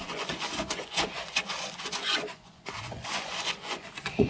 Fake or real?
fake